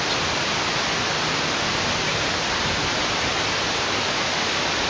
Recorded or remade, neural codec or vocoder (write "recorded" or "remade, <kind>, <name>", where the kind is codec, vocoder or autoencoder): recorded